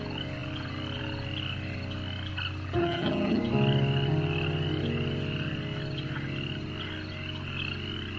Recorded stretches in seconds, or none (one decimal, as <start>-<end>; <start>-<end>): 0.0-2.8; 3.4-8.2